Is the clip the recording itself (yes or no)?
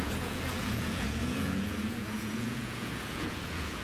no